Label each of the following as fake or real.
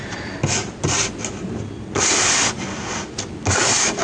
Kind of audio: real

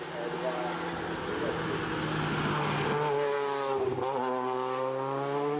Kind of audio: real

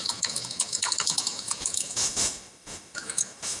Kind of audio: fake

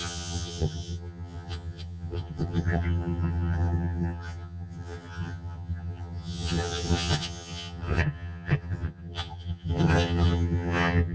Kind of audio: fake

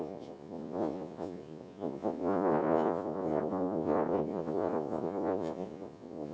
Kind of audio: fake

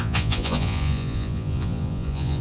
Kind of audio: fake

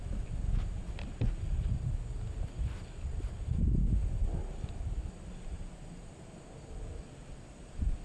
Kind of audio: real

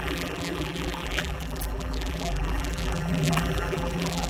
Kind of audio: fake